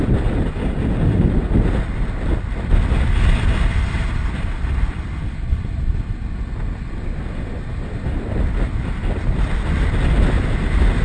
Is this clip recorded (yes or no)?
yes